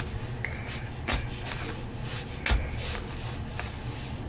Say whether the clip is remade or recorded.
recorded